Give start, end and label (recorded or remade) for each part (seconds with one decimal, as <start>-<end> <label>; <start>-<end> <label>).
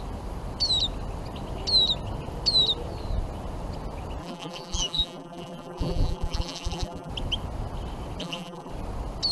0.0-4.2 recorded; 4.2-7.1 remade; 7.1-8.2 recorded; 8.2-8.7 remade; 8.7-9.3 recorded